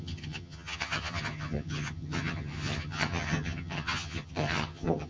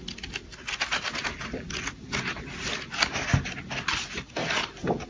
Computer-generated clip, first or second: first